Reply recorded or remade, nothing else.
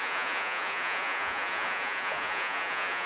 remade